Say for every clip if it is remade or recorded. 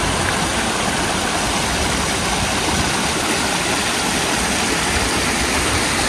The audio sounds recorded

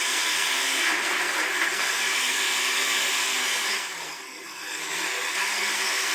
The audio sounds remade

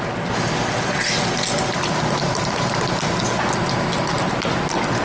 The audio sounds recorded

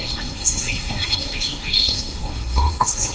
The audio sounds remade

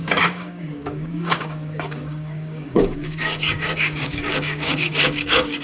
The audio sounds remade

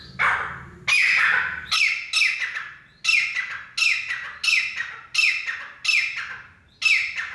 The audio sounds recorded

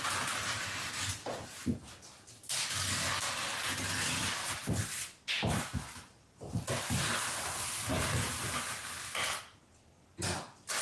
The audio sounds recorded